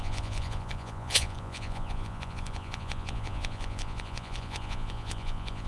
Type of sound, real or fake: fake